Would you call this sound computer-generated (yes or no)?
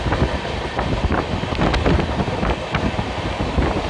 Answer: no